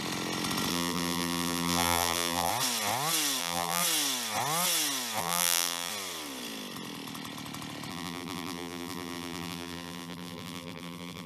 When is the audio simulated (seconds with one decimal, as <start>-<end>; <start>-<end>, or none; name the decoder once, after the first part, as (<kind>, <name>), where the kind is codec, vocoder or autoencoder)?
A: 0.7-2.5 (vocoder, BigVGAN v2); 3.4-3.8; 5.2-5.9; 7.9-11.3